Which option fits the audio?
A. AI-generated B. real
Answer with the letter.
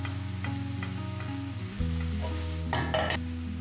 B